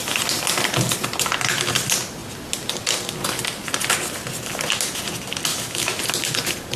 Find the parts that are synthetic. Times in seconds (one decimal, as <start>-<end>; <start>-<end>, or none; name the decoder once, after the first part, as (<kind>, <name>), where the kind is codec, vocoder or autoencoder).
5.5-6.0 (autoencoder, DAC-VAE)